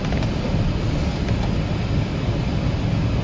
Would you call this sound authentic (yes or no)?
yes